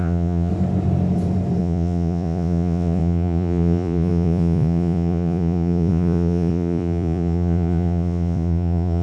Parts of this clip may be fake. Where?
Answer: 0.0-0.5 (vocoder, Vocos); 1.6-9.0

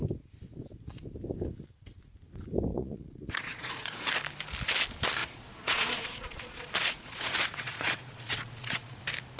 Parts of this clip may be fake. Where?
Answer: 2.7-4.1 (vocoder, Vocos); 5.2-9.0

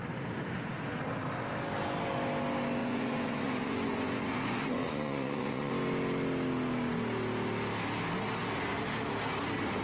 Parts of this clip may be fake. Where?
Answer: 2.8-5.7 (vocoder, Vocos)

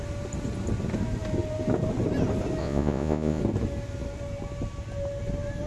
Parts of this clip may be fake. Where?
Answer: 2.6-3.4 (vocoder, Vocos)